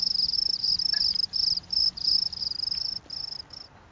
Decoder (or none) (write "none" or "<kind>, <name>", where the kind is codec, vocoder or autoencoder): none